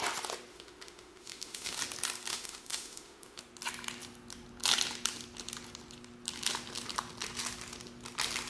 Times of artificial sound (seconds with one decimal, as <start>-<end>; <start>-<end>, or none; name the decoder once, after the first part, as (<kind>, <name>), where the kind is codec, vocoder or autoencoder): 0.5-1.8 (autoencoder, DAC-VAE); 2.3-3.4